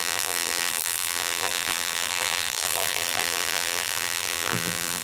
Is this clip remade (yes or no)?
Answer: yes